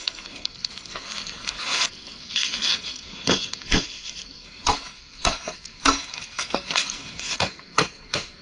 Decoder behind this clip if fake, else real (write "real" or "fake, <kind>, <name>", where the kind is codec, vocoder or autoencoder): fake, codec, SNAC